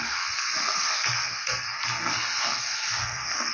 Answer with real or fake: fake